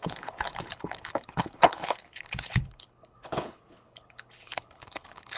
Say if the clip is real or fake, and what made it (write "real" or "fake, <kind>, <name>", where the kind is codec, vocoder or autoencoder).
fake, codec, HILCodec